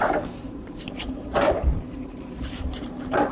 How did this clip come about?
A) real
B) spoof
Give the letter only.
B